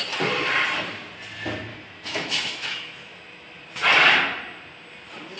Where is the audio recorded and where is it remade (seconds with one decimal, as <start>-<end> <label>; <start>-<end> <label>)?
0.0-1.7 recorded; 1.7-3.6 remade; 3.6-5.4 recorded